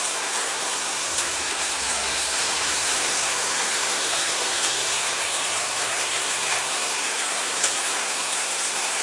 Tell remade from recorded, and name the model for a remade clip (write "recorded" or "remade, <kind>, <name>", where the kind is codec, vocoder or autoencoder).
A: remade, codec, SNAC